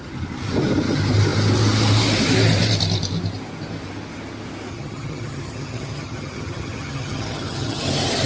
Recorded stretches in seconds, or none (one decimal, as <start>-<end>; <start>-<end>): 0.0-4.7; 7.8-8.3